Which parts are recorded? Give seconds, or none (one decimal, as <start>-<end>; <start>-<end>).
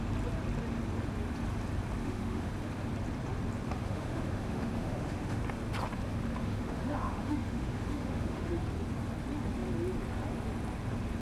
0.0-2.0; 2.5-3.8; 5.4-6.4; 8.5-11.2